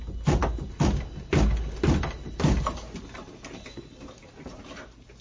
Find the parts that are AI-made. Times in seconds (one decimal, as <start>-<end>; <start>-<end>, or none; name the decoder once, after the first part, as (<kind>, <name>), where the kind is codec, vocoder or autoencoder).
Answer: none